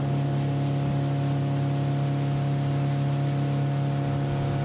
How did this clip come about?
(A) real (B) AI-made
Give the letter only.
A